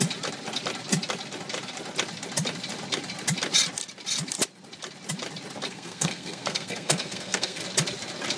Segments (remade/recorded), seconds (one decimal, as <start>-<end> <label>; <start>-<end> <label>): 0.0-5.7 recorded; 5.7-7.6 remade; 7.6-8.4 recorded